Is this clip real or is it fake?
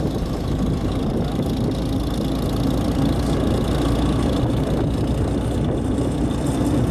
real